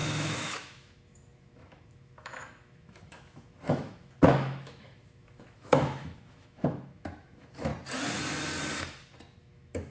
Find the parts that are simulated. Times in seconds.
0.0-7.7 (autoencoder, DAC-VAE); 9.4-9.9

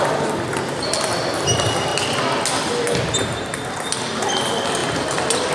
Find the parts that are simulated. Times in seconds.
none

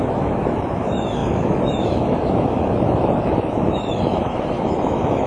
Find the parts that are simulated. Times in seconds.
0.0-5.3 (autoencoder, DAC-VAE)

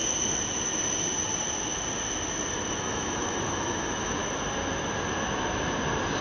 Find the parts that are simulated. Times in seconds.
2.7-4.2 (autoencoder, DAC-VAE)